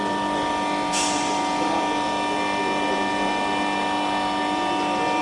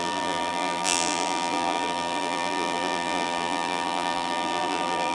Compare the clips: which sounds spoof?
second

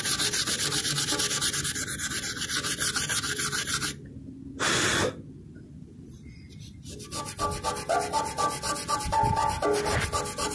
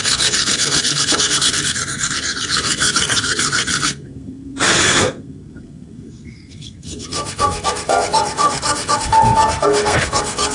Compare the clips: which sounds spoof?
second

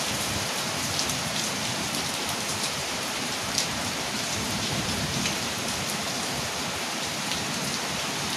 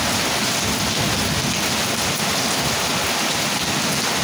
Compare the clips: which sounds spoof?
first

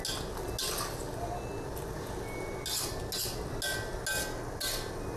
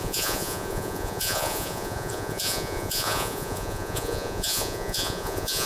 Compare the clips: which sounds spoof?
second